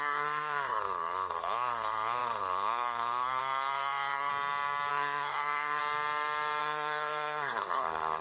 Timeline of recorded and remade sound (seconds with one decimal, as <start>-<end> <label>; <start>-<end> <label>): 0.0-4.3 remade; 4.3-4.9 recorded; 4.9-5.8 remade; 5.8-6.6 recorded; 6.6-8.2 remade